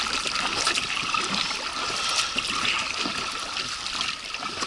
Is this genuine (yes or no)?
yes